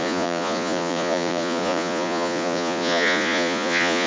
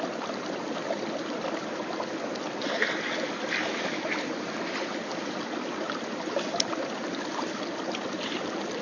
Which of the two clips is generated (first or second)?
first